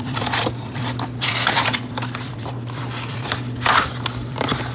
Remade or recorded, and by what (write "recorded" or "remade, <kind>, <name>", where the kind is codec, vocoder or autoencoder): remade, vocoder, BigVGAN v2